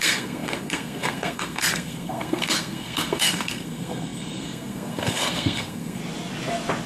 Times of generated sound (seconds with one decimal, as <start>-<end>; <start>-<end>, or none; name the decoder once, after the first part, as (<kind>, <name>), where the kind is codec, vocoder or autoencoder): 0.0-6.0 (codec, SNAC)